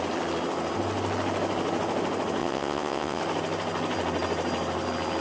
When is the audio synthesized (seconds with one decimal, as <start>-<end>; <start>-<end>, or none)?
2.4-3.2